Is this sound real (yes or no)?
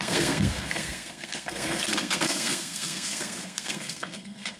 no